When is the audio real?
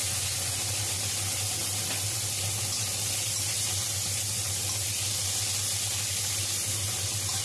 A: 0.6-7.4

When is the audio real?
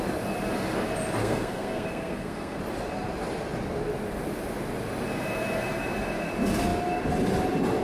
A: 0.0-1.2; 2.6-7.8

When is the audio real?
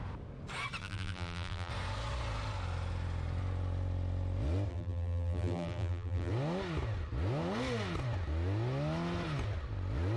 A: 0.0-0.8; 1.7-4.7; 6.3-10.2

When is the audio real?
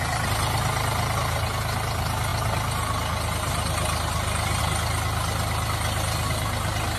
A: 0.0-7.0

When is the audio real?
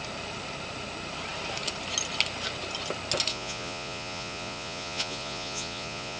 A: 0.0-3.3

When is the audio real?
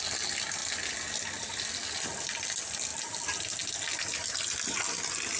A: 0.0-5.4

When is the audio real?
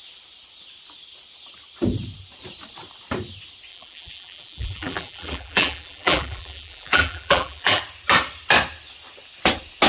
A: 0.0-3.7; 7.8-9.9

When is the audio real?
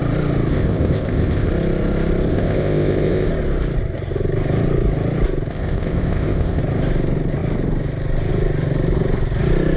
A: 0.0-0.5; 1.5-2.3; 3.3-5.5; 6.6-9.8